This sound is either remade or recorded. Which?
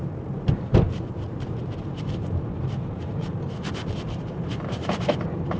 remade